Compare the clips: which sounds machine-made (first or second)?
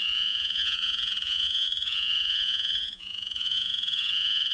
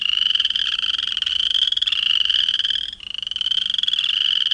first